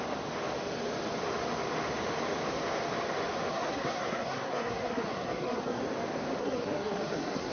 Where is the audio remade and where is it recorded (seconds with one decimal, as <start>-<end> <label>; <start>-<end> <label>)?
0.0-3.5 recorded; 3.5-5.8 remade; 5.8-6.4 recorded; 6.4-7.5 remade